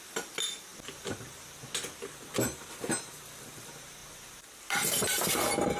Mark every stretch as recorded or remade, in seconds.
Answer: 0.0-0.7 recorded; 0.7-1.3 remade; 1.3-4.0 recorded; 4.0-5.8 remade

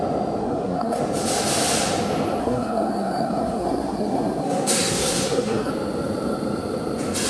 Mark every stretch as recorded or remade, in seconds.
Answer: 0.0-0.4 recorded; 0.4-1.0 remade; 1.0-2.4 recorded; 2.4-5.7 remade; 5.7-7.3 recorded

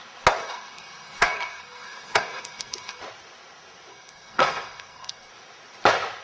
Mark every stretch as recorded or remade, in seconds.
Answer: 0.0-0.4 recorded; 0.4-3.0 remade; 3.0-3.9 recorded; 3.9-5.3 remade; 5.3-6.2 recorded

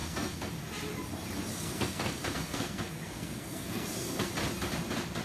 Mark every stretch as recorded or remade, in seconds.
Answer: 0.0-0.5 remade; 0.5-1.5 recorded; 1.5-4.3 remade; 4.3-5.2 recorded

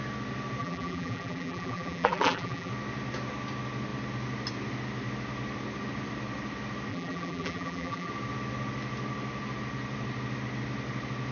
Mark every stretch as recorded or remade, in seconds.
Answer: 0.0-0.6 recorded; 0.6-2.7 remade; 2.7-6.9 recorded; 6.9-8.1 remade; 8.1-11.3 recorded